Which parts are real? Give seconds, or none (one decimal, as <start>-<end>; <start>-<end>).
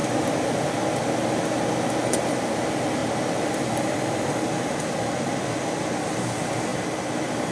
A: 0.0-7.5